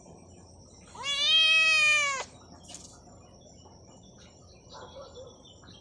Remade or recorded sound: recorded